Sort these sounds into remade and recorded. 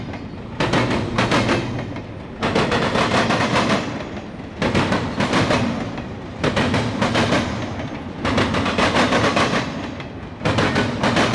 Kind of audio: recorded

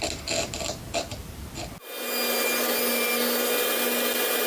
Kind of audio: recorded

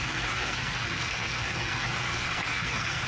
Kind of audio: remade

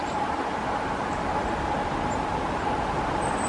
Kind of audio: recorded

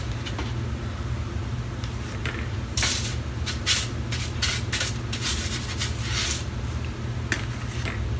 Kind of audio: recorded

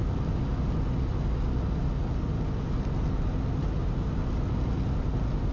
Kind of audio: recorded